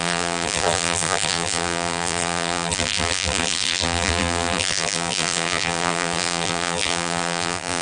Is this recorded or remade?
remade